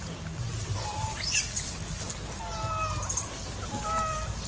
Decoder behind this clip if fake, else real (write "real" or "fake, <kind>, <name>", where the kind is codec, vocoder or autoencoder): real